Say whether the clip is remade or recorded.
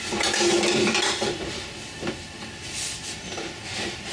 remade